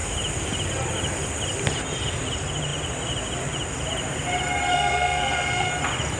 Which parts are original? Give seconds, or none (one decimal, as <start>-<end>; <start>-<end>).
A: 0.0-4.7; 5.7-6.2